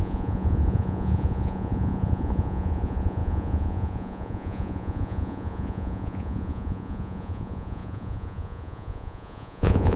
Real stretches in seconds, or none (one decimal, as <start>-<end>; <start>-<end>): none